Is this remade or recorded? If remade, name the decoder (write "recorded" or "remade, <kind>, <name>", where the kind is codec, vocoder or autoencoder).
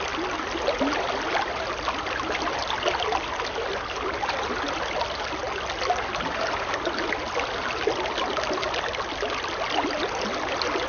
recorded